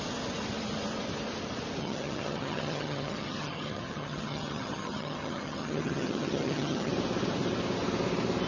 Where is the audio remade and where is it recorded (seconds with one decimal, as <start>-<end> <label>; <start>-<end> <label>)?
0.0-1.8 recorded; 1.8-6.9 remade; 6.9-8.5 recorded